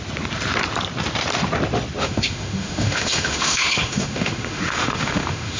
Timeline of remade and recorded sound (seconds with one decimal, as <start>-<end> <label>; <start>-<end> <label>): 0.0-2.0 recorded; 2.0-5.6 remade